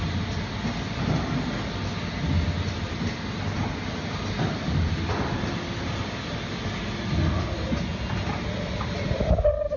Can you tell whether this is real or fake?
real